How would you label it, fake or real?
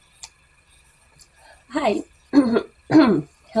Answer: fake